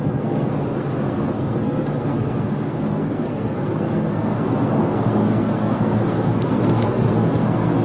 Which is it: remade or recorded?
remade